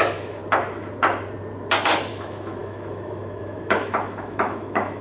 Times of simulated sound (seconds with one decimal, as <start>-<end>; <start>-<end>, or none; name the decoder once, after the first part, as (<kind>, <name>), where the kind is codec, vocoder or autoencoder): 0.0-0.4 (autoencoder, DAC-VAE); 2.1-5.0